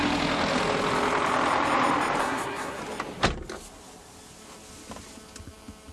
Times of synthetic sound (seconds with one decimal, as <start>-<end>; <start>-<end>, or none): 2.2-2.8